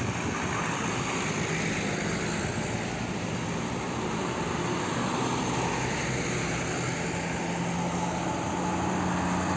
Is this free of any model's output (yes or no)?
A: yes